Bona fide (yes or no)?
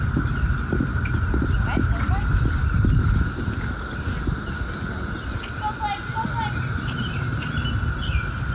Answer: yes